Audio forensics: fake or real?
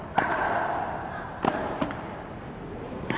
real